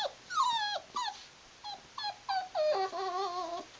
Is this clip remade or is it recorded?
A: recorded